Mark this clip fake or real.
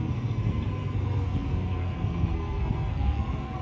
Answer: fake